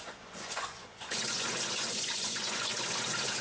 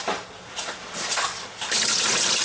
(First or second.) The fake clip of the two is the first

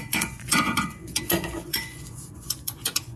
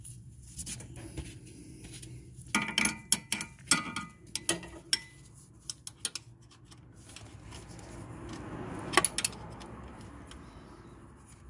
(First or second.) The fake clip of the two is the first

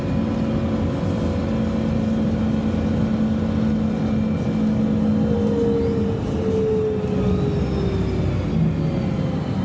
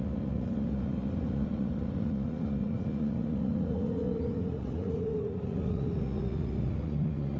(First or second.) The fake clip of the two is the second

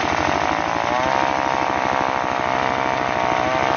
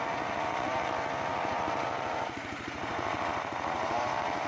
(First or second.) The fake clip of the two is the second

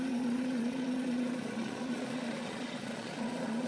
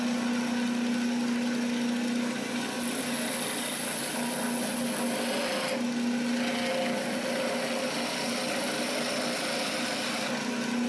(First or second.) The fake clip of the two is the first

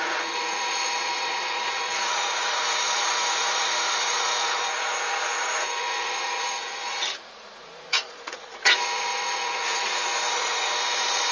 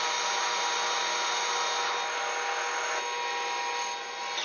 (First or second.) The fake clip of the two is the first